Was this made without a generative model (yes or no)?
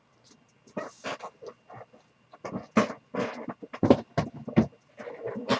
yes